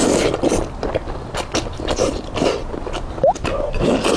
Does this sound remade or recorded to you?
recorded